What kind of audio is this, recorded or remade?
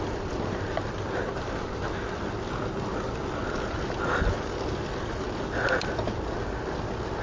recorded